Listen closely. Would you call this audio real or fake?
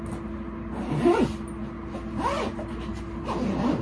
real